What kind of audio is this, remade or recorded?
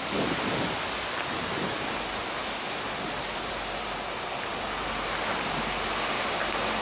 recorded